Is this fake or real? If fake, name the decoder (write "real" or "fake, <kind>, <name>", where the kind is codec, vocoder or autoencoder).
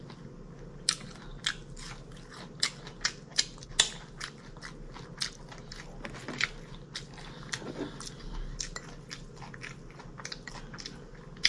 real